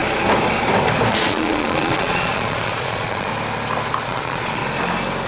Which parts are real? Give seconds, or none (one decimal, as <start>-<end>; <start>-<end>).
0.0-1.1; 3.3-4.0; 4.6-5.3